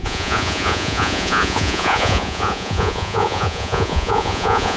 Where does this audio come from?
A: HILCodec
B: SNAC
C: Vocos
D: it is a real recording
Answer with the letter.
C